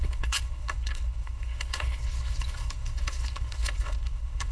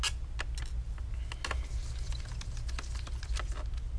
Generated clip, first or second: first